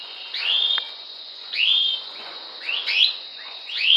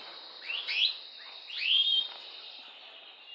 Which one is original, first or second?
second